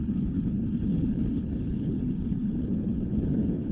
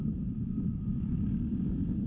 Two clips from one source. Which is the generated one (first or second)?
first